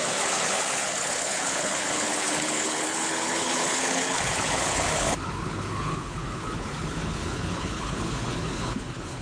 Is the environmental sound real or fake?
fake